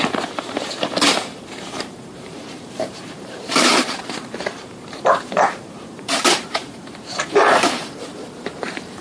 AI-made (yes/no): yes